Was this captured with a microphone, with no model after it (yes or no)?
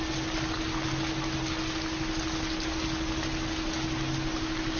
yes